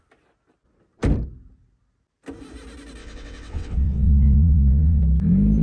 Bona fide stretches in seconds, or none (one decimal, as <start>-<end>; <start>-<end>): 0.0-3.0; 5.0-5.6